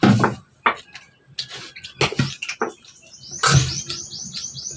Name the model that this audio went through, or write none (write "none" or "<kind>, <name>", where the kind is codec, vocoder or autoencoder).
none